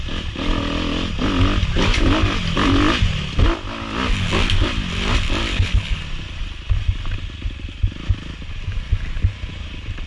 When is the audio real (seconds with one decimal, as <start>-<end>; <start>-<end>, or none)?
0.0-5.5; 6.0-10.1